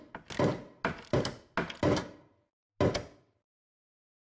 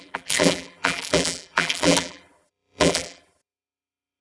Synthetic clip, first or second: second